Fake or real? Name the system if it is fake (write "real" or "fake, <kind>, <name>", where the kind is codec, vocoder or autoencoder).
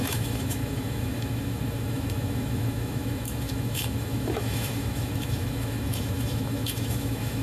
fake, autoencoder, DAC-VAE